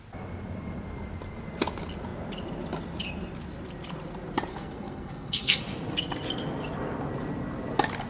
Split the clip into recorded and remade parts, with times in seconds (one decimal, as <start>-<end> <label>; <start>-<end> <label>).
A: 0.0-4.5 recorded; 4.5-5.6 remade; 5.6-8.1 recorded